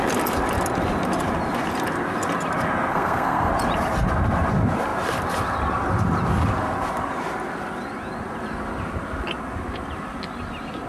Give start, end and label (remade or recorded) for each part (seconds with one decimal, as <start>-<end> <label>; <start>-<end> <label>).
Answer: 0.0-2.9 recorded; 2.9-3.5 remade; 3.5-10.9 recorded